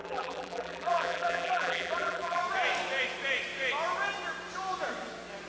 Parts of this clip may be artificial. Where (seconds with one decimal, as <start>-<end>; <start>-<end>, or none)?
0.0-2.4